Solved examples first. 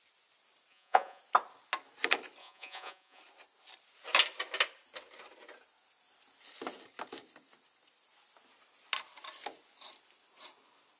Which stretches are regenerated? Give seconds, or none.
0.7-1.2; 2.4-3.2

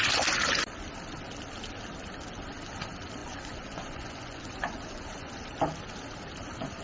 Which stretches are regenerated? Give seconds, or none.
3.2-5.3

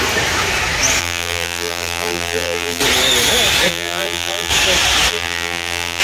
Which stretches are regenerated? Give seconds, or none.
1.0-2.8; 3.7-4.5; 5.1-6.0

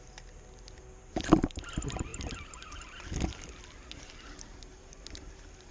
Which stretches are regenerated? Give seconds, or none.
none

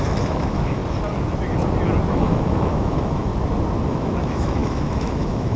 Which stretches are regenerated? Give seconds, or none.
0.0-0.8; 2.1-3.3; 3.9-5.6

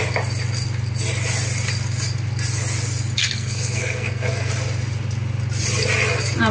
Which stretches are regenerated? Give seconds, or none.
3.2-4.5